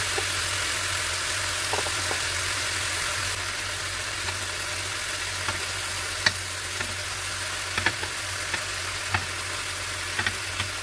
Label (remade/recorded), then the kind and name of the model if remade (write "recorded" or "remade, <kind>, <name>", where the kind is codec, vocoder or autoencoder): recorded